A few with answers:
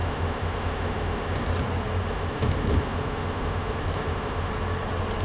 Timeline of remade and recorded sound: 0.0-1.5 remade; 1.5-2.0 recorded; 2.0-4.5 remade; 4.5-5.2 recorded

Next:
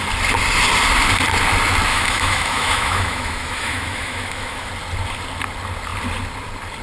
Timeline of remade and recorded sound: 0.0-1.9 recorded; 1.9-4.7 remade; 4.7-6.8 recorded

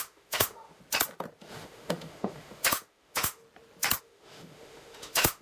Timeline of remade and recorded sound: 0.0-0.8 remade; 0.8-1.4 recorded; 1.4-3.4 remade; 3.4-4.0 recorded; 4.0-5.4 remade

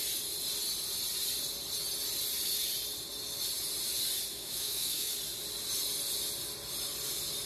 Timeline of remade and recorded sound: 0.0-4.3 recorded; 4.3-5.1 remade; 5.1-7.5 recorded

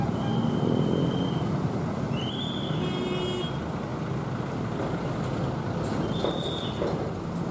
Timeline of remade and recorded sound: 0.0-7.5 recorded